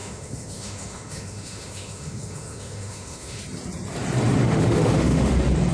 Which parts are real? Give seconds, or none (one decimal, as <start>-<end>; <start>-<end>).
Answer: 3.4-4.4; 5.3-5.7